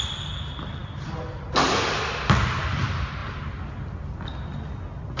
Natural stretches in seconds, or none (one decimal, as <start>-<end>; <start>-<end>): 0.0-5.2